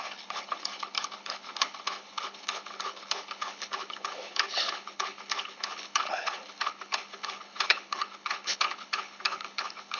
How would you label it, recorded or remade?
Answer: remade